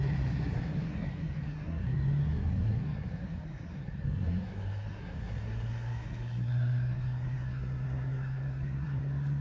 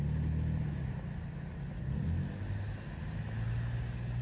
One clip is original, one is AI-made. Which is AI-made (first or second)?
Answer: first